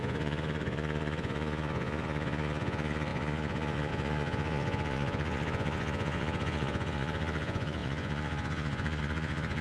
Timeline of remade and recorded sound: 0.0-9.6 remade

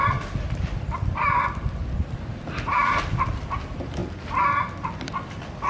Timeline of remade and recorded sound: 0.0-4.0 remade; 4.0-4.7 recorded; 4.7-5.7 remade

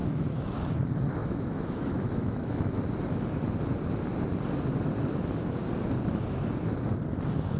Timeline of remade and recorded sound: 0.0-0.7 remade; 0.7-1.2 recorded; 1.2-2.8 remade; 2.8-7.6 recorded